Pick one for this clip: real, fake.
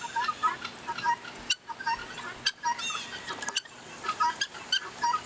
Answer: real